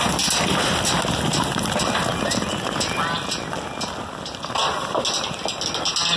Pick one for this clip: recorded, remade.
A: recorded